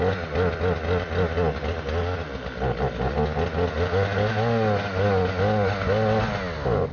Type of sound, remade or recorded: recorded